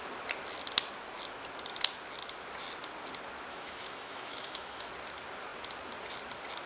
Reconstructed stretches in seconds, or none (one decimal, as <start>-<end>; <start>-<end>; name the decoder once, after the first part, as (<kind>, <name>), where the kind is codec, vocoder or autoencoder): 3.5-4.9 (autoencoder, DAC-VAE)